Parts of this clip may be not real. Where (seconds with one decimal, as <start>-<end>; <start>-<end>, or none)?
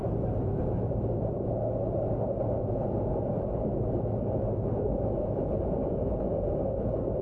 none